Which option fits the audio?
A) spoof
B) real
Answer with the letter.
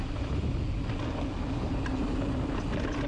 B